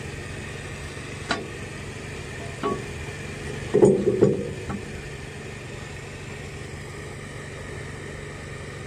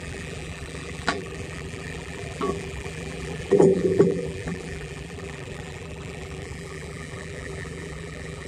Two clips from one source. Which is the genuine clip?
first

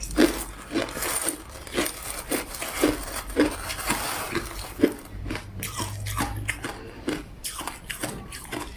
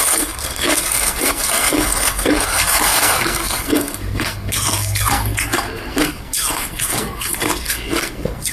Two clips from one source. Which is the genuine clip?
first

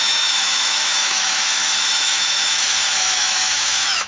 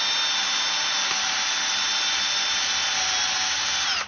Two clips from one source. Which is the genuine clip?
second